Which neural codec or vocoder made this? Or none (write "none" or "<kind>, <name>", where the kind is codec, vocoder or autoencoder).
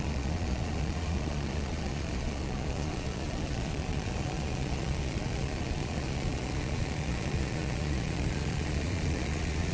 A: vocoder, Vocos